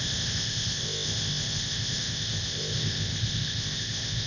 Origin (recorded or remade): remade